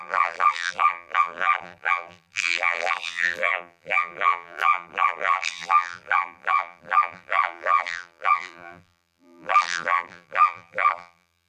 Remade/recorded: remade